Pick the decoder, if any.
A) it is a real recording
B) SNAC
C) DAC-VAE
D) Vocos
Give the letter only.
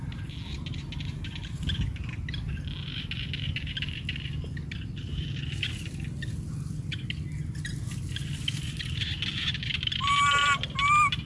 A